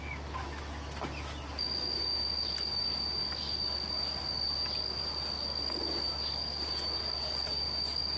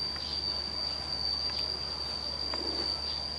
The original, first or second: second